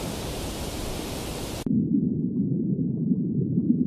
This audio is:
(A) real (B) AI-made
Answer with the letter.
B